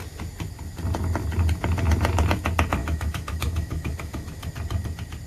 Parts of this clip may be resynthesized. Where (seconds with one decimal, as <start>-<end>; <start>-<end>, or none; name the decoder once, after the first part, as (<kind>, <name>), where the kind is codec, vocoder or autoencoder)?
2.8-4.5 (autoencoder, DAC-VAE)